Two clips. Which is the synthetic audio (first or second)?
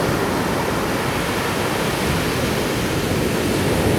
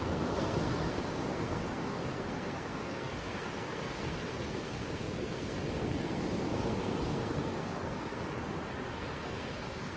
second